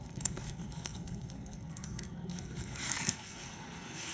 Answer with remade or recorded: remade